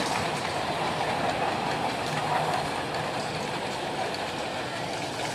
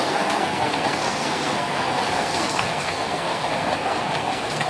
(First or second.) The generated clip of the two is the second